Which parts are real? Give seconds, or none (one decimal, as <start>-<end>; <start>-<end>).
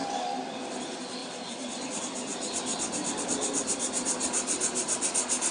0.6-1.2; 2.0-2.7; 3.2-5.5